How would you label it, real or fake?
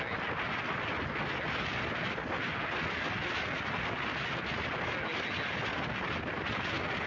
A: real